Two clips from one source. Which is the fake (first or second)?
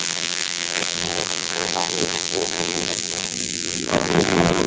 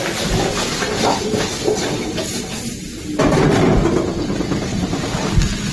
first